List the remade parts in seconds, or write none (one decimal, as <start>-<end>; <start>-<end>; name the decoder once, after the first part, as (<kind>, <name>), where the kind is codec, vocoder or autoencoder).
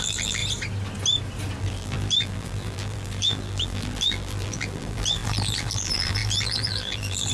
0.0-0.4 (vocoder, BigVGAN v2); 1.6-7.3